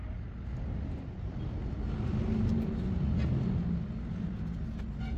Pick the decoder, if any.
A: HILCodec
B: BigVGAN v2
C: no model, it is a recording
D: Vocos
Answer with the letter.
C